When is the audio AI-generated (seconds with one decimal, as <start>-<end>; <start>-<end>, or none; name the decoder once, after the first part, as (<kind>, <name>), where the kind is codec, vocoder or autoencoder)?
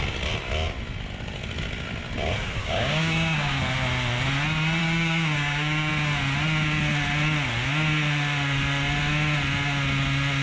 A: 2.6-3.6 (codec, DAC); 4.8-5.9